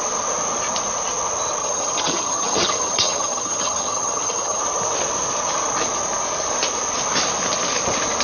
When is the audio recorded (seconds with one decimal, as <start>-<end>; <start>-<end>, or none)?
0.0-1.6; 4.6-8.2